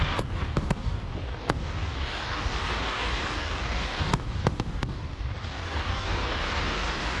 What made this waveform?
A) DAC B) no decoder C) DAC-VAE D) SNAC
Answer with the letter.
A